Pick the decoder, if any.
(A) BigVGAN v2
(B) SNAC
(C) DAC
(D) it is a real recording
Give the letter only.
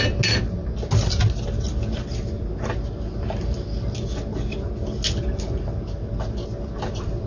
D